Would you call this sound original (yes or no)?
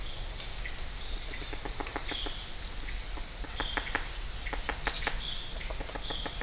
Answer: yes